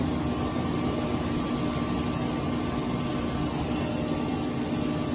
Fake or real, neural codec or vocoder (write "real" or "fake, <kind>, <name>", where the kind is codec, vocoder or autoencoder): real